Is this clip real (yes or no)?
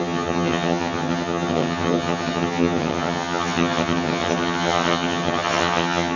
no